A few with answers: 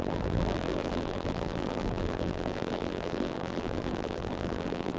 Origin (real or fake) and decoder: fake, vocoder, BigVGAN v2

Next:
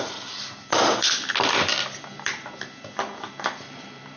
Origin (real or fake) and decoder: fake, vocoder, BigVGAN v2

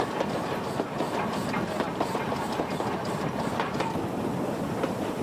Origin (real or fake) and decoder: real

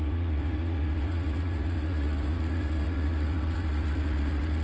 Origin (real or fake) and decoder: fake, vocoder, Vocos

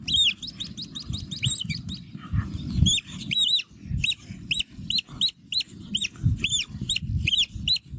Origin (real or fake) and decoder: real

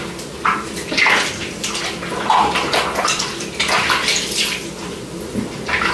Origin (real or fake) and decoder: real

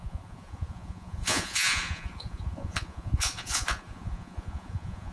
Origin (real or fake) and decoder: fake, vocoder, Vocos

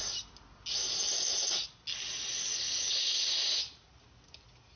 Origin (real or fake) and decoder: real